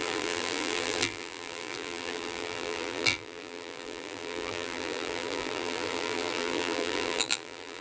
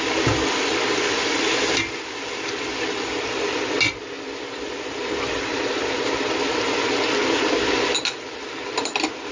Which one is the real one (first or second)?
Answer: second